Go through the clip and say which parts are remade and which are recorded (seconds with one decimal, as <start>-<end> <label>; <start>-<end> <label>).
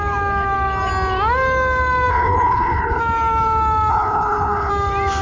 0.0-2.1 recorded; 2.1-3.0 remade; 3.0-3.9 recorded; 3.9-4.7 remade; 4.7-5.2 recorded